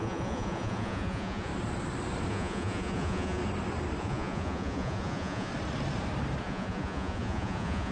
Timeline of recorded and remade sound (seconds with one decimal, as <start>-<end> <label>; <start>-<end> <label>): 0.0-1.5 remade; 1.5-2.3 recorded; 2.3-3.4 remade; 3.4-4.0 recorded; 4.0-5.5 remade; 5.5-6.4 recorded; 6.4-7.9 remade